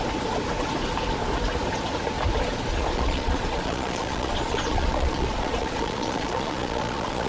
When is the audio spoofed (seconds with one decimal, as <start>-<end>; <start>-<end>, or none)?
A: 2.7-7.3